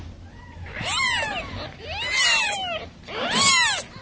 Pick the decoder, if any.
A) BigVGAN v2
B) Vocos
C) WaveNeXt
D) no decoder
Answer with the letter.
D